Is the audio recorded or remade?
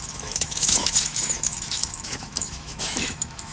remade